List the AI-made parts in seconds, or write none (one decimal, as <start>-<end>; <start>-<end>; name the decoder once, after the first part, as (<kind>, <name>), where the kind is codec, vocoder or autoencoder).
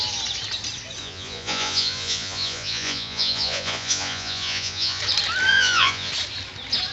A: 1.0-5.0 (vocoder, Vocos); 5.5-6.1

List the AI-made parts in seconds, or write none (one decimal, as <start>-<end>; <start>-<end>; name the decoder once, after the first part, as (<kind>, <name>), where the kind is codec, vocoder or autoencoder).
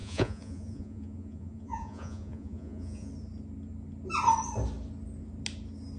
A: 0.0-3.1 (vocoder, Vocos)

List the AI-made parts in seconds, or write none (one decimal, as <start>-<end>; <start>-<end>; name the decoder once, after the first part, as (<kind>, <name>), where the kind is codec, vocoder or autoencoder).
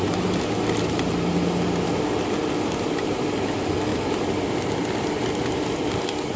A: none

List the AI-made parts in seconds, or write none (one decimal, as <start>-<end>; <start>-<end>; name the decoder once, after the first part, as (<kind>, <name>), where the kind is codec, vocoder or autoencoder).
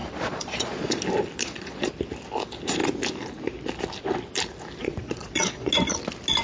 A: 0.0-1.0 (vocoder, Vocos); 1.4-1.9; 4.8-5.7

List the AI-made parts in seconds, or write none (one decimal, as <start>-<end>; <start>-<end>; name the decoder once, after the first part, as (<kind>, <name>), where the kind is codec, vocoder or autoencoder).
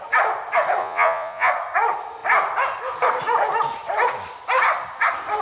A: 0.8-1.5 (vocoder, Vocos)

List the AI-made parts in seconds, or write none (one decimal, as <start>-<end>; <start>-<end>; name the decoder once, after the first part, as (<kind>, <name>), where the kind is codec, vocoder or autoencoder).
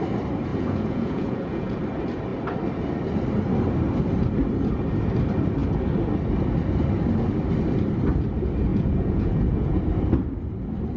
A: 0.5-1.8 (vocoder, Vocos); 8.7-9.8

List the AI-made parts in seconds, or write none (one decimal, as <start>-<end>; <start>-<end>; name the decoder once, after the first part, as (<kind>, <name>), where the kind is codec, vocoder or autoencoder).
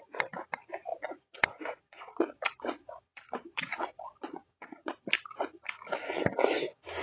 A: 0.9-5.1 (vocoder, Vocos)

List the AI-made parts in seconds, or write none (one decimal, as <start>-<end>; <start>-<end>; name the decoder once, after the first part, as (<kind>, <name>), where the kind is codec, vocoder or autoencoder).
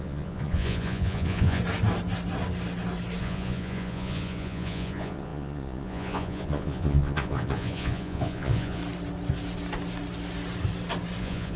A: 0.0-1.6 (vocoder, Vocos); 3.2-8.8; 11.2-11.6